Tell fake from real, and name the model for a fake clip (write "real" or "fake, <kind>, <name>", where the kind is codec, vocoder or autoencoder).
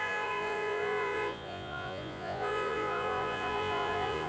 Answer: fake, vocoder, Vocos